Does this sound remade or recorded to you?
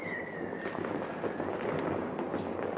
recorded